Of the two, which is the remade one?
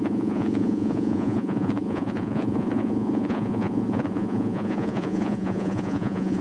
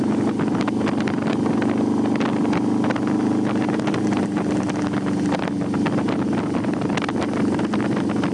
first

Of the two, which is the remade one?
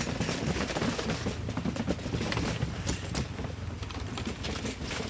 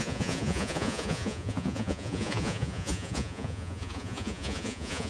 second